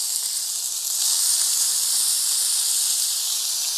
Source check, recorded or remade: recorded